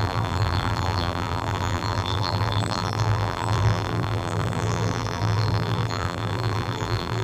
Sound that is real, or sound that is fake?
fake